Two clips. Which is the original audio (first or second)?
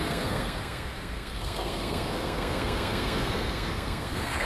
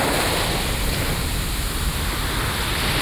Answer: second